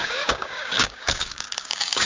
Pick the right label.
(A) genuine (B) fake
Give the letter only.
B